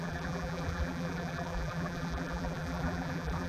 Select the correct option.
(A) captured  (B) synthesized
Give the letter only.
B